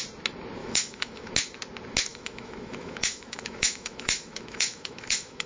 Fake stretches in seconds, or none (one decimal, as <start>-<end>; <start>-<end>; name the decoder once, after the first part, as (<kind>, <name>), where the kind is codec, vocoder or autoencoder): 0.6-1.3 (autoencoder, DAC-VAE); 2.1-5.5